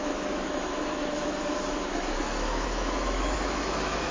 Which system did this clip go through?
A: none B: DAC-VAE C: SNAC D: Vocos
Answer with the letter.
B